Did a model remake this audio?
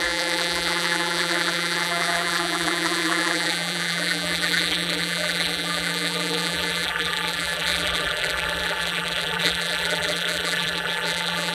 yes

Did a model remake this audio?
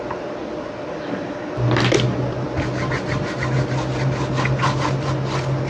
no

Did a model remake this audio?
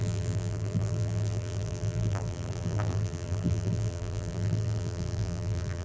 yes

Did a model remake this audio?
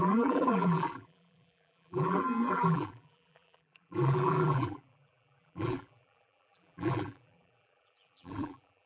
yes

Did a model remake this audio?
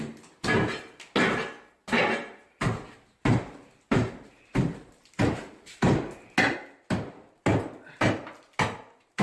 no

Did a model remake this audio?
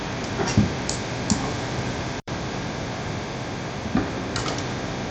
yes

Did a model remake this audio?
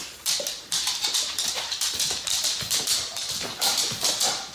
yes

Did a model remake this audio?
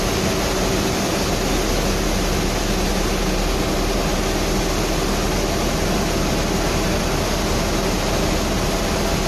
no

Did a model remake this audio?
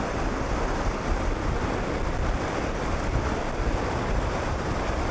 no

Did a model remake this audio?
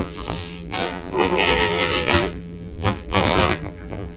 yes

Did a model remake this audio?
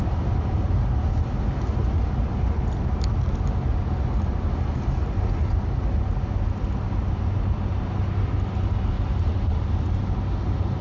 no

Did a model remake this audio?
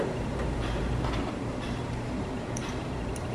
yes